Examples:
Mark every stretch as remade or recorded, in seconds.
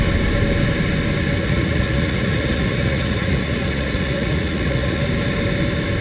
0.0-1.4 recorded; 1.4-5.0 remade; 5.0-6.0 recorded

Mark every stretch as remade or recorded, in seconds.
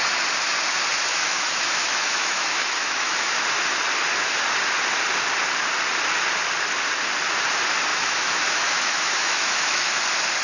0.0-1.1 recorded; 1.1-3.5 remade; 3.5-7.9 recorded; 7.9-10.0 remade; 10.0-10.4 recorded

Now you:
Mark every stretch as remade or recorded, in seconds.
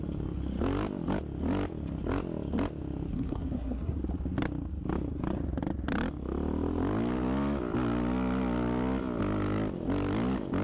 0.0-3.1 recorded; 3.1-4.0 remade; 4.0-10.6 recorded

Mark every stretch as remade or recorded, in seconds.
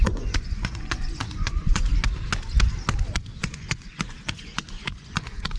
0.0-1.9 remade; 1.9-3.4 recorded; 3.4-5.6 remade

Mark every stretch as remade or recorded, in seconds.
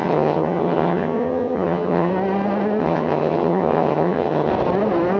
0.0-2.1 remade; 2.1-2.8 recorded; 2.8-4.5 remade; 4.5-5.2 recorded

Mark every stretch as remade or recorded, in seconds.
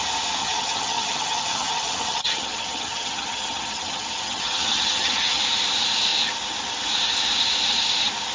0.0-0.4 recorded; 0.4-5.4 remade; 5.4-8.3 recorded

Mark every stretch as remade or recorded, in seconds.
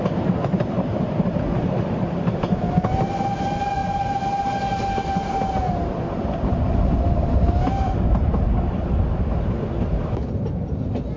0.0-11.2 recorded